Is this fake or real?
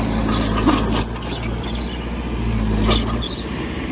real